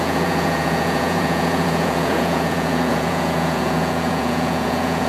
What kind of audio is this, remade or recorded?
remade